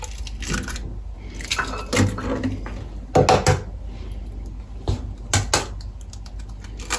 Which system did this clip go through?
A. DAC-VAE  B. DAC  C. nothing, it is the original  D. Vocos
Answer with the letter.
C